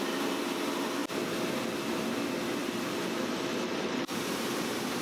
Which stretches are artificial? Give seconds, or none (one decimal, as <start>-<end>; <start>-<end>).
2.6-5.0